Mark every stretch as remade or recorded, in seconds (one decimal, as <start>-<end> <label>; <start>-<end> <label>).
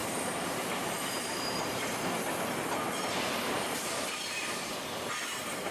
0.0-1.9 remade; 1.9-3.1 recorded; 3.1-4.7 remade; 4.7-5.2 recorded; 5.2-5.7 remade